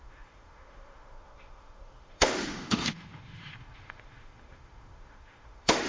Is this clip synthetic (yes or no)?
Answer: yes